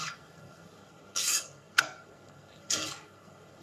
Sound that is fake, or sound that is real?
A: fake